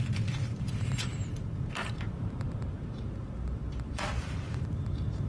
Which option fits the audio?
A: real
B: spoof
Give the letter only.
B